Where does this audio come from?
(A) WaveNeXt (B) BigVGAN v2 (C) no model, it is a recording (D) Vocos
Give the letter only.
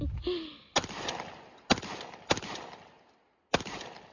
C